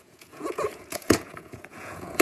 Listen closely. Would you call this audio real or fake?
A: fake